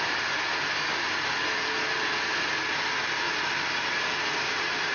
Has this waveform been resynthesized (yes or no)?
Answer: no